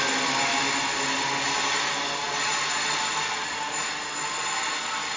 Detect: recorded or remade recorded